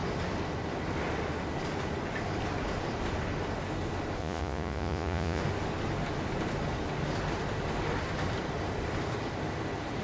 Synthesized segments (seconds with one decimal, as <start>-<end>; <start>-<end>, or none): 4.2-5.4